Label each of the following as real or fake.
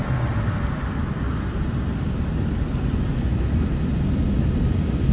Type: real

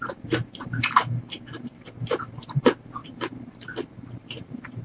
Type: fake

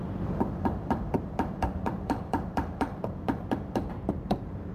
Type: fake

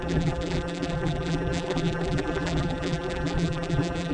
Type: fake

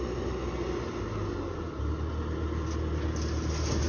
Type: real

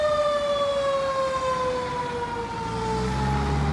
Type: real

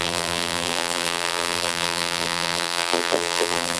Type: fake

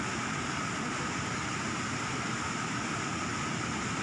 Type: real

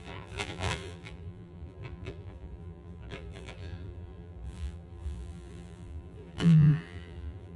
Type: fake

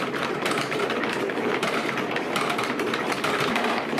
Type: fake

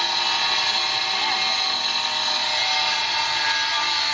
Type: real